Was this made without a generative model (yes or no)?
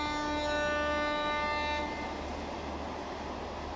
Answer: yes